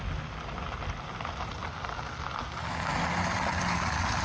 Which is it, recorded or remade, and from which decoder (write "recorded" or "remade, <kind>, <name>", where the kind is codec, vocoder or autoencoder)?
recorded